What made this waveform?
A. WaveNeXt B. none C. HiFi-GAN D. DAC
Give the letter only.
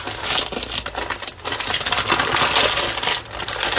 B